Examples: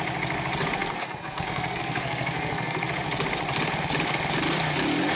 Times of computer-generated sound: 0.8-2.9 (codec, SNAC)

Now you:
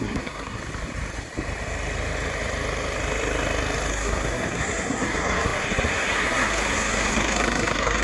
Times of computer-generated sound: 0.0-0.6 (codec, SNAC); 3.9-8.0

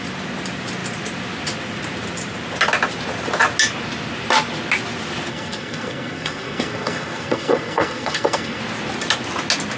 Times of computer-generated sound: 5.3-8.6 (codec, SNAC)

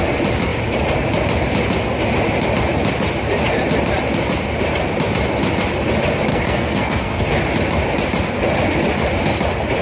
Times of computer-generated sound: 6.3-7.3 (codec, SNAC)